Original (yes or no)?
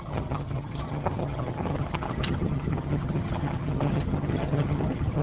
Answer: no